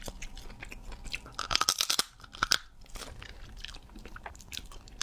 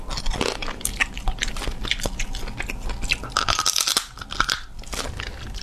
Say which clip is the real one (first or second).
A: second